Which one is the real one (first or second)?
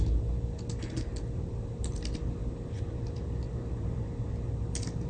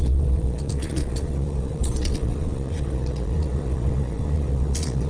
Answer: first